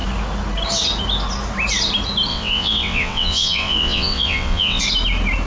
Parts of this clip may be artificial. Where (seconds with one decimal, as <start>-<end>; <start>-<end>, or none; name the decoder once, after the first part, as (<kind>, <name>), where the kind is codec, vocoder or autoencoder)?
2.3-4.8 (vocoder, WaveNeXt)